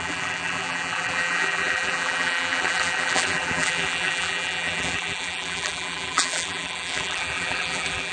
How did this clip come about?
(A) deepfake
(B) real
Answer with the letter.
A